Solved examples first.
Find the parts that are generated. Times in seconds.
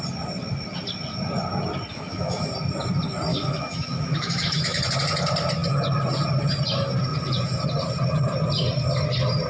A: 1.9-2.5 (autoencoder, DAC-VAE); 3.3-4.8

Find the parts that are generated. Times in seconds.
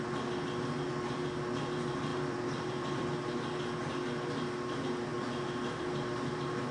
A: 2.1-3.0 (vocoder, BigVGAN v2)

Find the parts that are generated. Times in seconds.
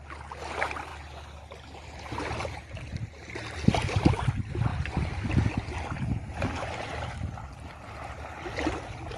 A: none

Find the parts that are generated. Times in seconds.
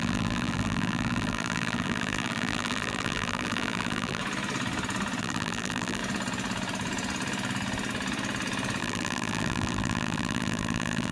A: 0.0-4.2 (vocoder, BigVGAN v2); 5.2-6.0; 8.8-11.1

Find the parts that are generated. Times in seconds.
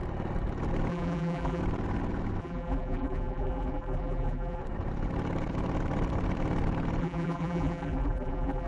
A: 0.9-1.6 (vocoder, BigVGAN v2); 2.4-4.6; 7.0-8.7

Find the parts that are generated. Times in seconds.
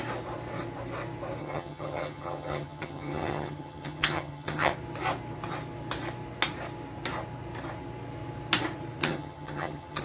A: 1.4-4.7 (vocoder, HiFi-GAN); 9.0-10.0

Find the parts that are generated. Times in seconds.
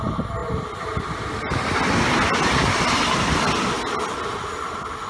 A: none